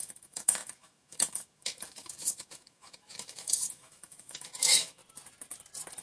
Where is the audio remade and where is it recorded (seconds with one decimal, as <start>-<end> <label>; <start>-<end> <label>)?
0.0-5.0 remade; 5.0-6.0 recorded

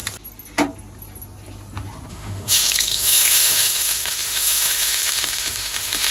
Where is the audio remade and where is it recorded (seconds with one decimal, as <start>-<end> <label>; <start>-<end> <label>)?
0.0-2.1 recorded; 2.1-6.1 remade

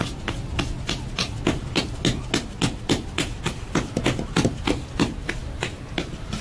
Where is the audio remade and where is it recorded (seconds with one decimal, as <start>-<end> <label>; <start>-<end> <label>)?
0.0-6.4 recorded

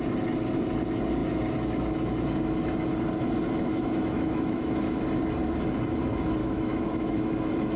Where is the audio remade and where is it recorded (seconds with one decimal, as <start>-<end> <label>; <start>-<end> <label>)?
0.0-3.7 recorded; 3.7-5.1 remade; 5.1-6.4 recorded; 6.4-7.3 remade; 7.3-7.8 recorded

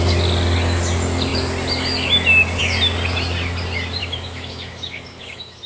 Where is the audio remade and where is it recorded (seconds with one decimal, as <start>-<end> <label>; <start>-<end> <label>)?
0.0-4.0 recorded; 4.0-5.7 remade